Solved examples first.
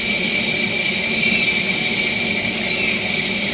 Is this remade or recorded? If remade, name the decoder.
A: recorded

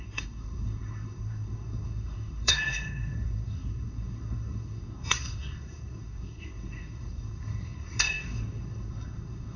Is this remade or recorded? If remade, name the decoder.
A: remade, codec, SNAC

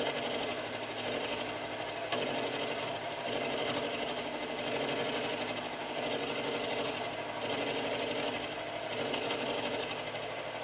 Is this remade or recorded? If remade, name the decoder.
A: recorded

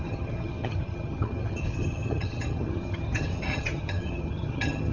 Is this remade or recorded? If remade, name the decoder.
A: remade, vocoder, HiFi-GAN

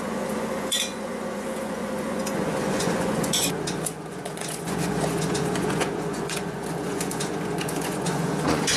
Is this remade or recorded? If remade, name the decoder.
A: remade, vocoder, Vocos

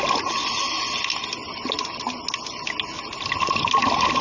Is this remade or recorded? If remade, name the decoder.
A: recorded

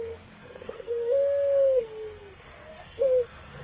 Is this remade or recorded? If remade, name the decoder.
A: remade, codec, SNAC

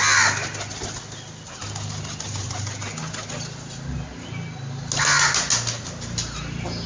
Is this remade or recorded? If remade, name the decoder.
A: recorded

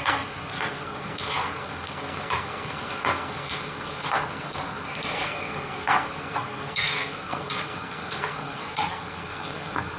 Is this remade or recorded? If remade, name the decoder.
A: remade, codec, SNAC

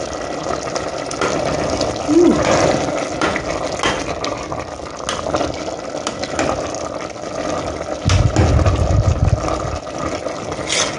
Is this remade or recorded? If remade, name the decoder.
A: recorded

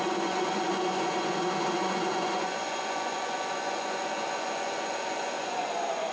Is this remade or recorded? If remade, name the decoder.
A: remade, vocoder, Vocos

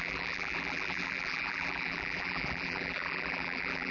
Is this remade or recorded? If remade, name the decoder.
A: remade, vocoder, BigVGAN v2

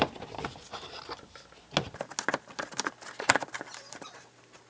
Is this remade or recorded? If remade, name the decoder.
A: recorded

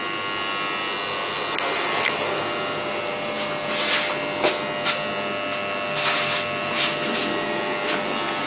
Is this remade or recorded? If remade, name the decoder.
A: recorded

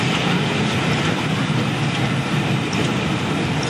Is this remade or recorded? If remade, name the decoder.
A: recorded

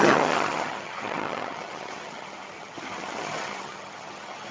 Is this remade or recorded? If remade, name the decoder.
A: remade, vocoder, HiFi-GAN